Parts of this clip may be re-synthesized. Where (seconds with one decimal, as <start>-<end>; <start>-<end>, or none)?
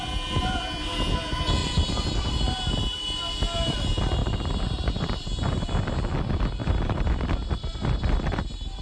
1.6-2.6; 4.2-5.7; 6.6-7.1